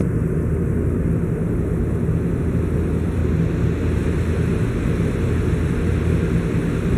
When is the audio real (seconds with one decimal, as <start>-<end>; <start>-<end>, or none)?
3.2-3.9